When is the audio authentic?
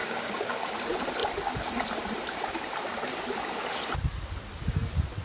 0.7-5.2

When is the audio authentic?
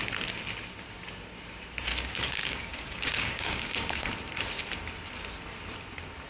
0.0-1.9; 4.1-6.3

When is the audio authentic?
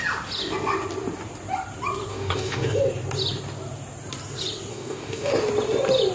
0.0-2.1; 2.8-4.7; 5.3-6.1